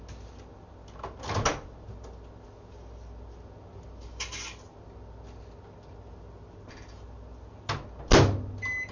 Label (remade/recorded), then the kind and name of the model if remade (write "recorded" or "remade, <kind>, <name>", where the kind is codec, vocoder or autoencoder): recorded